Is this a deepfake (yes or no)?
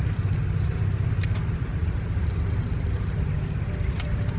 no